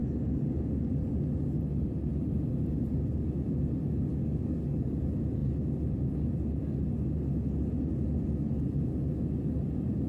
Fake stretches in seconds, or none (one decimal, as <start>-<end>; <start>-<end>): 4.1-5.0